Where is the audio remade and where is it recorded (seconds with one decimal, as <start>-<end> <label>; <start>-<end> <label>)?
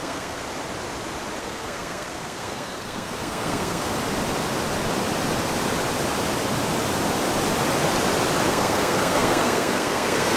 0.0-0.4 remade; 0.4-1.4 recorded; 1.4-3.9 remade; 3.9-8.5 recorded; 8.5-10.4 remade